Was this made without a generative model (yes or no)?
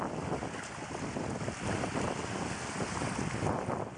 yes